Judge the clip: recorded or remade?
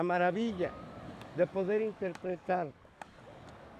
remade